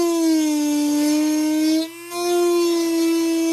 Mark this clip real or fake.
real